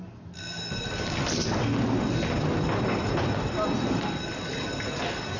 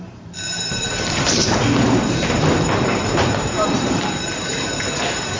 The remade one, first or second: second